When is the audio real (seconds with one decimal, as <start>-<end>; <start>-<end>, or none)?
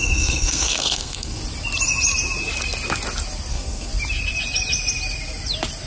1.4-3.5; 3.9-5.9